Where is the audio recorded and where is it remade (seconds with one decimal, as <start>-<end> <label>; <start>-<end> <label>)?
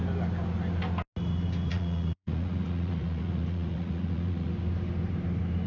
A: 0.0-1.7 recorded; 1.7-4.5 remade; 4.5-5.7 recorded